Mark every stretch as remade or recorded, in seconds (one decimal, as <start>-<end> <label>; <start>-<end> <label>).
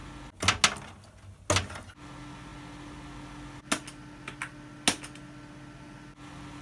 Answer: 0.0-6.6 recorded